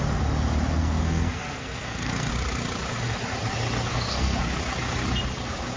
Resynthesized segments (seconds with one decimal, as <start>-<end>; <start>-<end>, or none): 0.8-2.3; 3.9-4.4